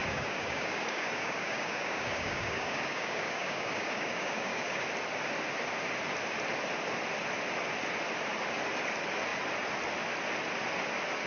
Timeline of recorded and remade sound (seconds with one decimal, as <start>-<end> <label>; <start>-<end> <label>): 0.0-4.8 remade; 4.8-11.3 recorded

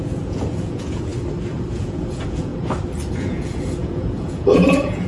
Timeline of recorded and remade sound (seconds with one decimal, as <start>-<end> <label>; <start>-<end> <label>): 0.0-1.1 remade; 1.1-1.8 recorded; 1.8-2.5 remade; 2.5-3.1 recorded; 3.1-5.1 remade

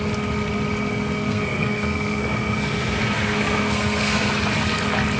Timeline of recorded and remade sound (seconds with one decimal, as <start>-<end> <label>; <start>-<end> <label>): 0.0-1.2 recorded; 1.2-4.3 remade; 4.3-5.2 recorded

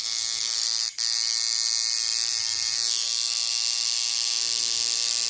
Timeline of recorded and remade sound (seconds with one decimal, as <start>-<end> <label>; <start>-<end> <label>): 0.0-5.3 recorded

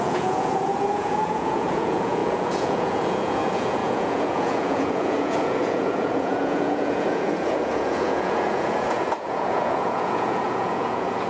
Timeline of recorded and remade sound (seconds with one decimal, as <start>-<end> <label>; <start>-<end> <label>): 0.0-11.3 remade

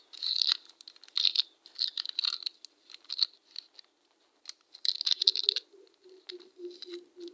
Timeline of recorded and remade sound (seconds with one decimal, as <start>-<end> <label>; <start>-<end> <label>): 0.0-7.3 recorded